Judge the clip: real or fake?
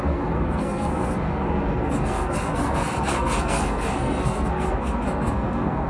fake